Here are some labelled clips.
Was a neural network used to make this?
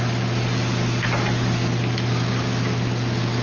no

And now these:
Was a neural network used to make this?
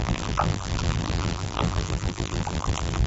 yes